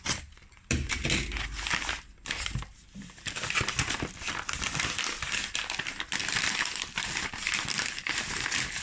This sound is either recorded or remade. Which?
remade